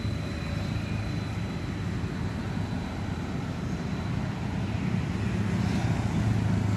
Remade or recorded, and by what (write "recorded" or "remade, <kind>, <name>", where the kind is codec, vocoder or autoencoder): recorded